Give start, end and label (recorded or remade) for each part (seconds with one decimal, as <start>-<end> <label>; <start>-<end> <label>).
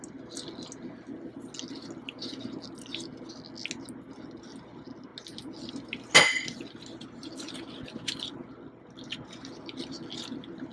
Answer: 0.0-10.7 recorded